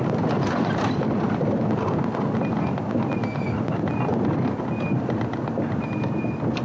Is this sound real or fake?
real